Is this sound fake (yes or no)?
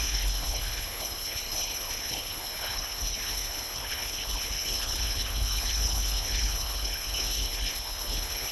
yes